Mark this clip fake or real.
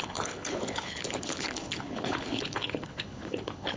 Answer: fake